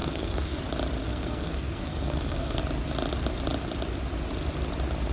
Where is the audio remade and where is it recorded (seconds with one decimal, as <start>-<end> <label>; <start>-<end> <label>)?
0.0-0.6 remade; 0.6-1.0 recorded; 1.0-2.6 remade; 2.6-5.1 recorded